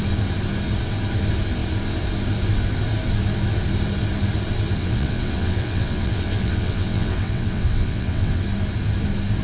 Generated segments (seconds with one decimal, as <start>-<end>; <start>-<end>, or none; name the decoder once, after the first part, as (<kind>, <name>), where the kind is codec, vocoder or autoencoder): 4.8-8.4 (vocoder, WaveNeXt)